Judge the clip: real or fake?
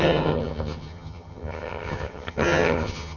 fake